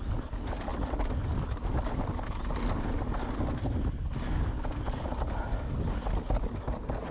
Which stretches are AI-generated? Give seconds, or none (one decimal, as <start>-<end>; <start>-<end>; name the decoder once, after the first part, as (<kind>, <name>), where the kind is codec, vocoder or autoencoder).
none